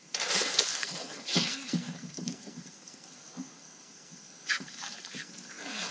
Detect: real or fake fake